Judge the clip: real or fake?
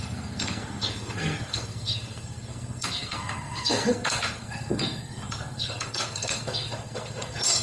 fake